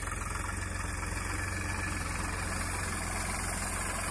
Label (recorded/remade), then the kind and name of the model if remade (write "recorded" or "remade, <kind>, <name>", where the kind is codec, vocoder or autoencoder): recorded